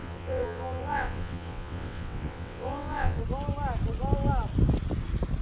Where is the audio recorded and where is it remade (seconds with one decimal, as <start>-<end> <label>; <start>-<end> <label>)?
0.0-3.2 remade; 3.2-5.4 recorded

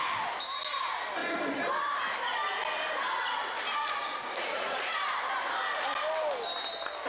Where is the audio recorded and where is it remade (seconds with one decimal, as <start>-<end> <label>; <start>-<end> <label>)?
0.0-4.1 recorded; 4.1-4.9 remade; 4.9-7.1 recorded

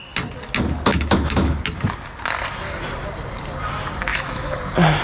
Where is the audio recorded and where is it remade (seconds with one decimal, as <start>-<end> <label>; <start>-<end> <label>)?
0.0-0.9 recorded; 0.9-1.6 remade; 1.6-4.1 recorded; 4.1-4.6 remade; 4.6-5.0 recorded

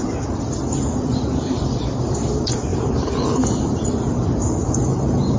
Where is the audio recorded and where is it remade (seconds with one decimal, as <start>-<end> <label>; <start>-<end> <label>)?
0.0-5.4 recorded

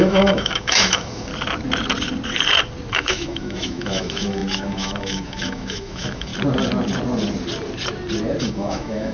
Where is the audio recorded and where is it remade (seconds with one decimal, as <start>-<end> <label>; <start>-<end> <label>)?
0.0-1.3 remade; 1.3-2.9 recorded; 2.9-6.3 remade; 6.3-8.4 recorded; 8.4-9.1 remade

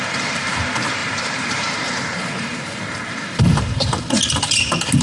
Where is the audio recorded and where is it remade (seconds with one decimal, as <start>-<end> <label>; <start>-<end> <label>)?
0.0-1.0 recorded; 1.0-4.0 remade; 4.0-5.0 recorded